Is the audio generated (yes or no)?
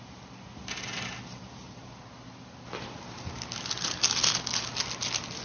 no